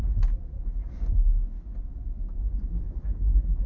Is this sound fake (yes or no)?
no